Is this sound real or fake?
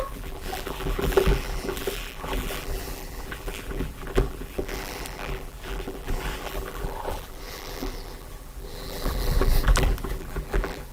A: fake